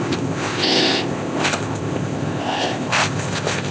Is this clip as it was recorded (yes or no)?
no